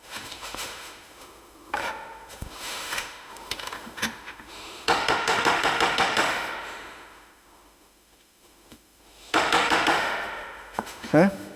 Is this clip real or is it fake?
fake